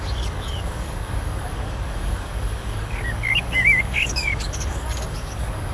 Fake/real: fake